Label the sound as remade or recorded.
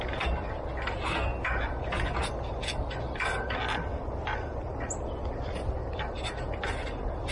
recorded